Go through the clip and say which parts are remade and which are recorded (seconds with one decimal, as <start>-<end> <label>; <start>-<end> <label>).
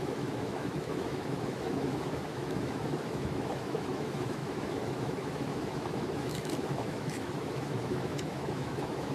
0.0-9.1 remade